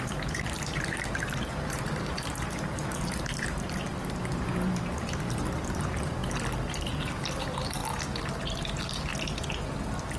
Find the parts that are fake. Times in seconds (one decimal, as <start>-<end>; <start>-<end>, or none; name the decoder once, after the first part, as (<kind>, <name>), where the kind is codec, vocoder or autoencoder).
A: 0.0-6.2 (vocoder, BigVGAN v2); 6.8-7.8; 8.3-9.1